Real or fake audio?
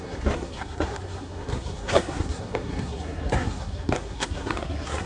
fake